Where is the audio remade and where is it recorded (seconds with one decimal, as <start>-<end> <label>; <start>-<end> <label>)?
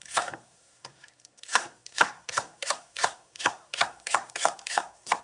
0.0-5.2 remade